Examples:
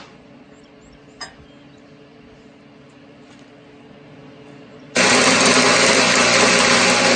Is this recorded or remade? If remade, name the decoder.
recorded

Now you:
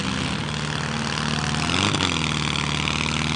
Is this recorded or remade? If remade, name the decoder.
recorded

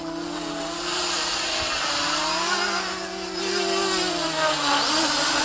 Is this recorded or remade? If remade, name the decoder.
recorded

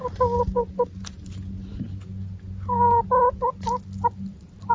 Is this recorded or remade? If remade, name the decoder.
recorded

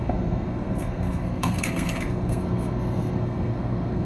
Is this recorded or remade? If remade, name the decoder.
remade, codec, SNAC